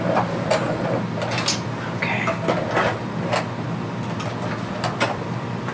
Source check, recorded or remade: recorded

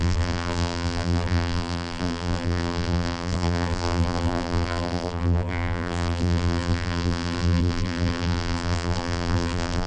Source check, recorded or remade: remade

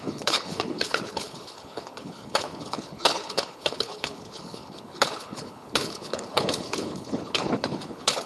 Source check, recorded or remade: remade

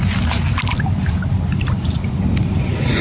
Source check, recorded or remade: recorded